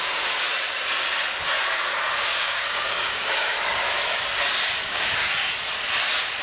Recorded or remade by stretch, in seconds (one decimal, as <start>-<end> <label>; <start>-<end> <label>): 0.0-2.4 recorded; 2.4-3.5 remade; 3.5-4.8 recorded; 4.8-5.3 remade; 5.3-6.4 recorded